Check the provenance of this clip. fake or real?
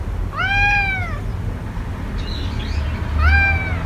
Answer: real